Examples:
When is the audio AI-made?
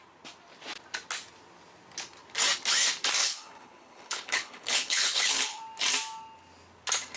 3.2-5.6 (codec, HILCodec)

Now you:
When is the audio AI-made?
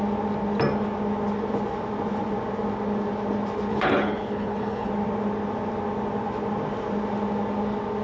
3.7-4.9 (codec, HILCodec)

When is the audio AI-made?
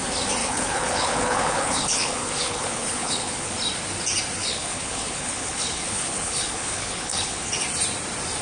0.4-3.5 (codec, HILCodec); 4.4-7.5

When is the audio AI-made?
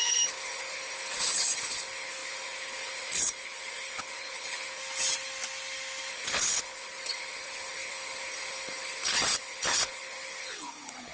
0.0-4.8 (codec, HILCodec); 6.1-11.1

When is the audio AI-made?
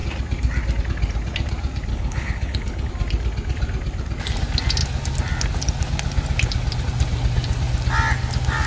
1.9-2.9 (codec, HILCodec)